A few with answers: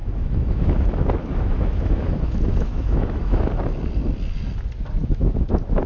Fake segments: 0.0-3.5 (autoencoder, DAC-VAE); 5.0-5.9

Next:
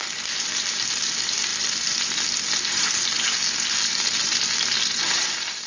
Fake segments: none